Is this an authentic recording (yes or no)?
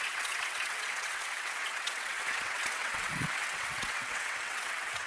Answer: no